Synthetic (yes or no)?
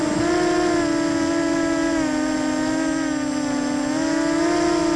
no